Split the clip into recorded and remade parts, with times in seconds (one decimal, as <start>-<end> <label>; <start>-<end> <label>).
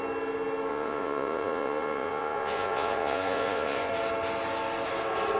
0.0-0.7 recorded; 0.7-3.9 remade; 3.9-5.4 recorded